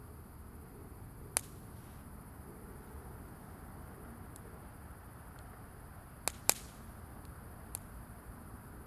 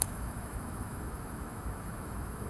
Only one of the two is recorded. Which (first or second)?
first